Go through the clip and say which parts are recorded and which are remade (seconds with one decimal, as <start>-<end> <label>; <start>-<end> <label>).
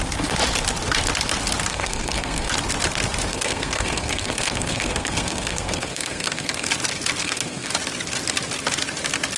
0.0-1.7 recorded; 1.7-2.5 remade; 2.5-3.3 recorded; 3.3-6.7 remade; 6.7-7.2 recorded; 7.2-7.7 remade; 7.7-9.4 recorded